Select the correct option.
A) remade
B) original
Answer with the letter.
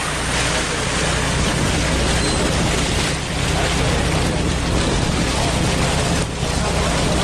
B